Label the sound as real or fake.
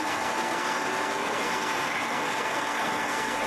fake